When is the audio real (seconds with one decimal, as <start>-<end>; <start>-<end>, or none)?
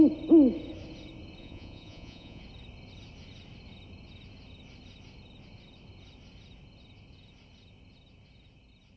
0.0-1.4; 2.4-9.0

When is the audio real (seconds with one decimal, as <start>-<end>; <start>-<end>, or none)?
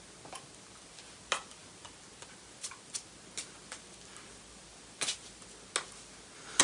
0.0-6.6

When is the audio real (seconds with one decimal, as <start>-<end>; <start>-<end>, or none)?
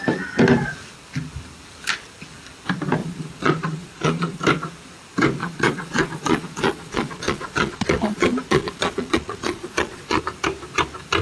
0.0-3.0; 4.4-5.4; 10.2-11.2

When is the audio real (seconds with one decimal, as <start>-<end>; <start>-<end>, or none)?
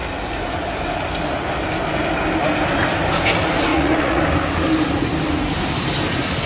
0.0-3.7; 4.2-6.5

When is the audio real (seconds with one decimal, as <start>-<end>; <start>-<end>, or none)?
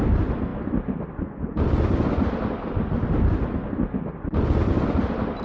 0.0-5.4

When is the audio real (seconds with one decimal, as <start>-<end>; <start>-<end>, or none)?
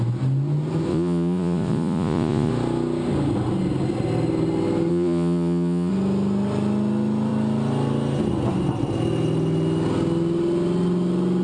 0.0-0.9; 2.5-4.9; 5.9-11.4